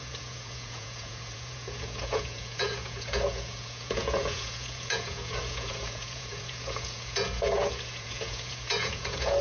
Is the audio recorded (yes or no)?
no